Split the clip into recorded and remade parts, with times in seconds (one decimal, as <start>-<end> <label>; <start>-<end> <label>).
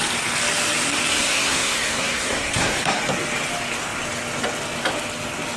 0.0-1.1 recorded; 1.1-3.0 remade; 3.0-5.6 recorded